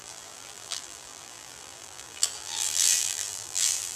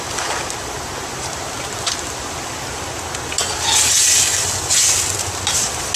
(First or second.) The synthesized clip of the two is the first